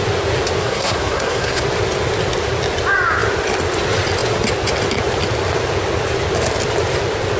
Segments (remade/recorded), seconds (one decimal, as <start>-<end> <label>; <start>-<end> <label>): 0.0-0.6 recorded; 0.6-1.6 remade; 1.6-7.4 recorded